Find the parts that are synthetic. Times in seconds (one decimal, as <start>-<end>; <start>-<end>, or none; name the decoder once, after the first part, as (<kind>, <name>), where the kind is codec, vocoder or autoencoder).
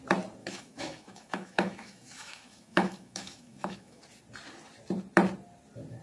0.4-4.0 (autoencoder, DAC-VAE)